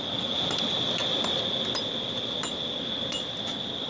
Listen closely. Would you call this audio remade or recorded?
recorded